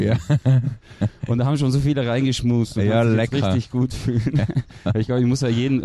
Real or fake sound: real